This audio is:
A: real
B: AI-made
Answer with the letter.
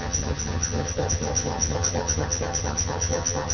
B